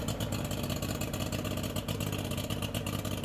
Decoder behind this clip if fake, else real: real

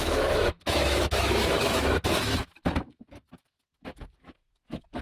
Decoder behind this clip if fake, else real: fake, autoencoder, DAC-VAE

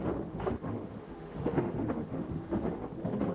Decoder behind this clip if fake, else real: fake, autoencoder, DAC-VAE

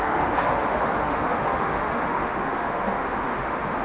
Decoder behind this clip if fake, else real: fake, autoencoder, DAC-VAE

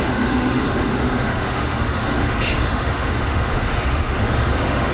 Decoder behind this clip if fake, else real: fake, autoencoder, DAC-VAE